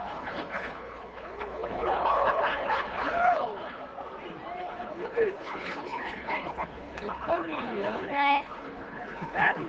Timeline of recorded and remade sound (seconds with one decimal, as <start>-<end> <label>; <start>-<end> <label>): 0.0-3.8 remade; 3.8-4.6 recorded; 4.6-9.7 remade